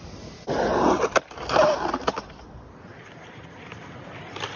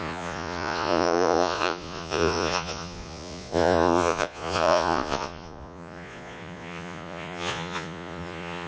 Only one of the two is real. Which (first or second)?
first